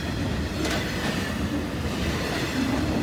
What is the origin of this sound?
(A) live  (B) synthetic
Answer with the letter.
A